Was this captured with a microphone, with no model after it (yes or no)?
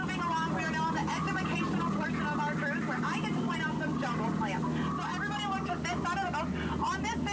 yes